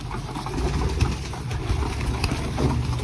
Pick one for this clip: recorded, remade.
recorded